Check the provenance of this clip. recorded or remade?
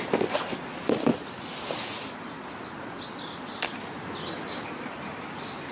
recorded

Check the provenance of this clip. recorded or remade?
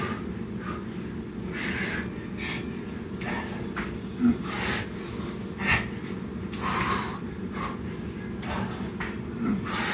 recorded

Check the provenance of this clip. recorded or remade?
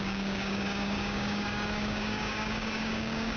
remade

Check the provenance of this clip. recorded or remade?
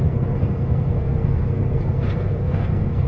remade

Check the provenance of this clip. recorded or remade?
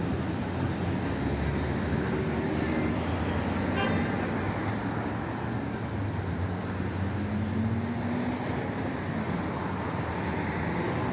recorded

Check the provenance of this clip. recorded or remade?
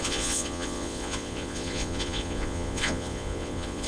remade